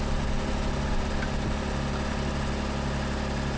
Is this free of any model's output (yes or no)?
yes